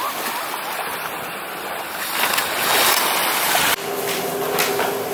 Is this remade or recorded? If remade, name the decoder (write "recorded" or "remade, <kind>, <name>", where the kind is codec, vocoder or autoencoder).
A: recorded